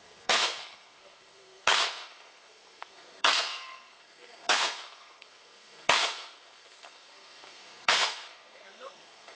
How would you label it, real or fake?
fake